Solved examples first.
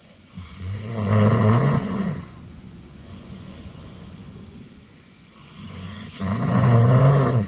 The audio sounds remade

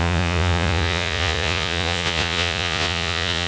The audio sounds remade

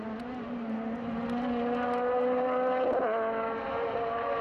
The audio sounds recorded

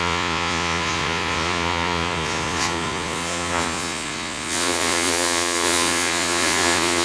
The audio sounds remade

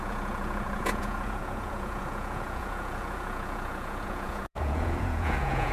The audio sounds remade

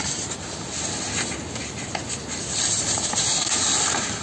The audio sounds recorded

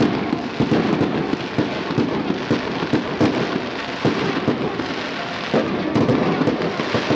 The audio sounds recorded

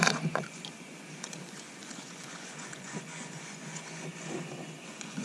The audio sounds remade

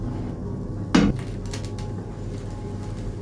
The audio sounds recorded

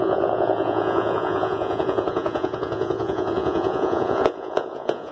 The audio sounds remade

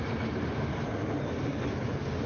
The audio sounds recorded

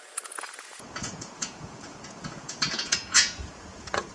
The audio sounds remade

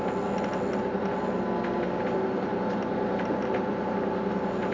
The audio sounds recorded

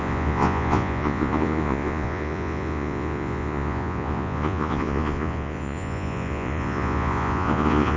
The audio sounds remade